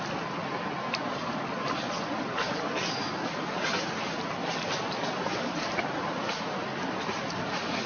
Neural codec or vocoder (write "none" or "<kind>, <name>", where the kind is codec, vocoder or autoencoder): none